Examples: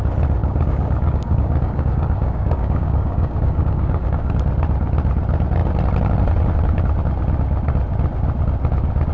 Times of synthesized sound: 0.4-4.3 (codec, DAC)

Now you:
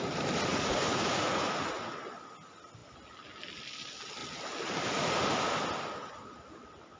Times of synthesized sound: 0.5-1.9 (vocoder, Vocos)

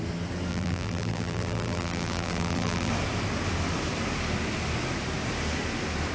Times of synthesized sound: 0.5-2.9 (vocoder, BigVGAN v2)

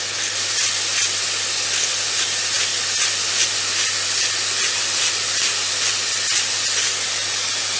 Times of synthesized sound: none

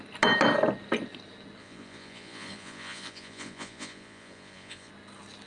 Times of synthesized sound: 1.6-4.9 (vocoder, Vocos)

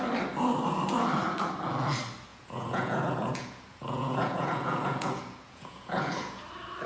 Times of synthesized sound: 2.3-6.4 (vocoder, Vocos)

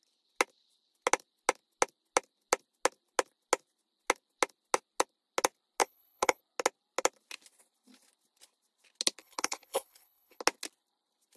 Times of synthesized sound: 5.8-6.4 (codec, HILCodec); 9.2-10.4

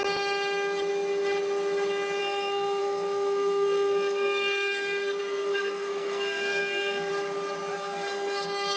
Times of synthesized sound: 2.2-7.1 (codec, SNAC); 7.7-8.8